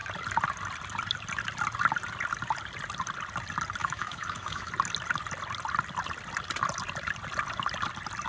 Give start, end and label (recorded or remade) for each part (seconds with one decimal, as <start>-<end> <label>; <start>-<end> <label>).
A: 0.0-3.8 recorded; 3.8-4.7 remade; 4.7-8.3 recorded